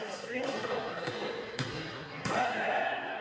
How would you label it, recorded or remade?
remade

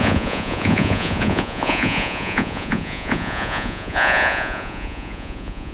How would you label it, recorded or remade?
remade